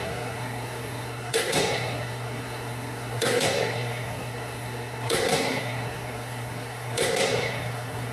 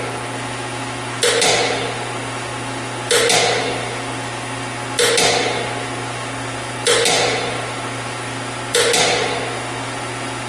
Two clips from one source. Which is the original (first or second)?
second